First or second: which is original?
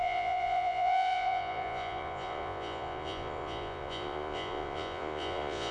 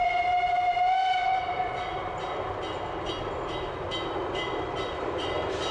second